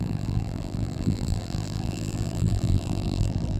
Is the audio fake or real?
fake